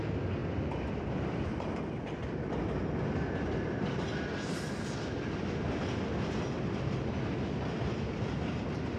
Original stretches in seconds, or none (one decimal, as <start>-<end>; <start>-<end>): 0.0-0.4; 1.4-9.0